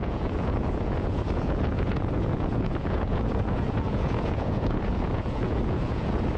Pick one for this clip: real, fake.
fake